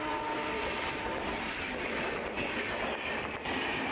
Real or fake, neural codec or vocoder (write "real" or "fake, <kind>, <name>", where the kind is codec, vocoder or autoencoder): fake, vocoder, BigVGAN v2